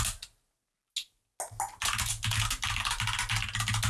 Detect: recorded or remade recorded